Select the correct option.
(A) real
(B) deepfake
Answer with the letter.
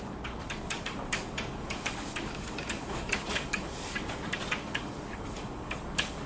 B